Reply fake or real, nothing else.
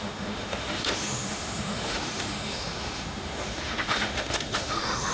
fake